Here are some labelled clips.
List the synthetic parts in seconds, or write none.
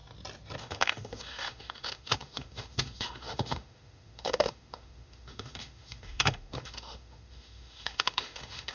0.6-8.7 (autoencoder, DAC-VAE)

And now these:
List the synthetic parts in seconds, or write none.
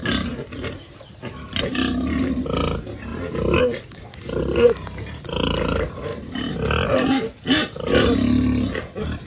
0.0-1.0 (vocoder, BigVGAN v2); 3.1-3.6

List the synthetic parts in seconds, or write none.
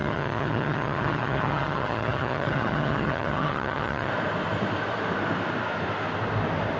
0.0-4.1 (vocoder, HiFi-GAN)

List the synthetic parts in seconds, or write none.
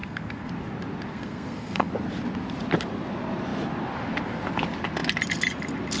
0.0-0.5 (codec, SNAC); 1.1-1.9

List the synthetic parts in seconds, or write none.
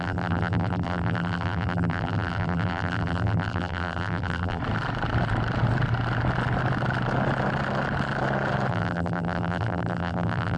0.0-4.6 (vocoder, BigVGAN v2); 8.7-10.6